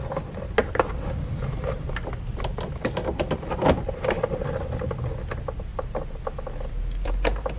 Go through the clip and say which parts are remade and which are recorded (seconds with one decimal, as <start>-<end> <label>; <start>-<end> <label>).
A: 0.0-0.6 recorded; 0.6-4.7 remade; 4.7-5.7 recorded; 5.7-7.1 remade; 7.1-7.6 recorded